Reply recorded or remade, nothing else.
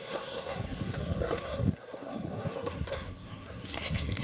remade